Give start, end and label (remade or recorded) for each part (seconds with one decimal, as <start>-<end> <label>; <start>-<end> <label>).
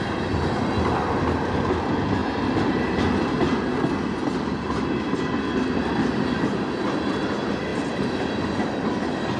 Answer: 0.0-7.7 recorded; 7.7-8.4 remade; 8.4-9.4 recorded